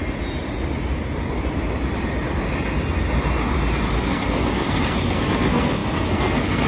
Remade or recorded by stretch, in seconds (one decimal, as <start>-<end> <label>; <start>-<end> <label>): 0.0-4.0 recorded; 4.0-6.7 remade